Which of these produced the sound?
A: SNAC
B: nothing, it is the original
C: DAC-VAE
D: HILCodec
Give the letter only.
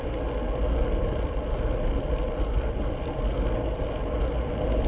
B